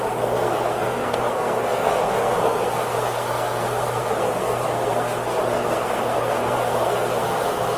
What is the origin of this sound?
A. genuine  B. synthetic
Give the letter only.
B